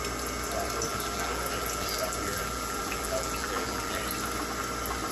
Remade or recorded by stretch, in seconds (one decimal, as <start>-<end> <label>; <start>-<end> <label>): 0.0-0.9 recorded; 0.9-4.0 remade; 4.0-5.1 recorded